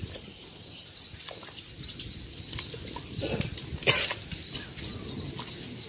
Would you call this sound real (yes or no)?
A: yes